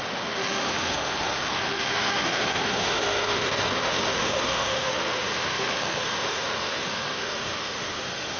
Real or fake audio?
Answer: fake